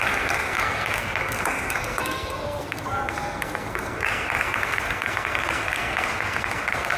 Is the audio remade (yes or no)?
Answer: yes